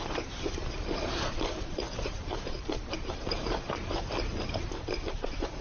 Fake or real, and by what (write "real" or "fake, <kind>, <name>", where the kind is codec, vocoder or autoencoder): fake, vocoder, BigVGAN v2